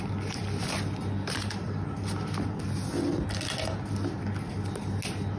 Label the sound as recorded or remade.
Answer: recorded